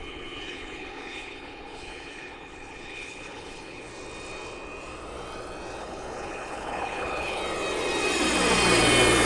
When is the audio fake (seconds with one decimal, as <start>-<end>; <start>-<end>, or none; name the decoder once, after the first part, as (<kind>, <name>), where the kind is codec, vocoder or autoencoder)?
0.0-3.9 (codec, HILCodec); 5.8-7.4